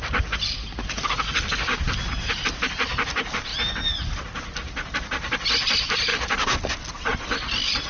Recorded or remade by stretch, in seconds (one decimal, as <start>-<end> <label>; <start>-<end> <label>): 0.0-7.9 recorded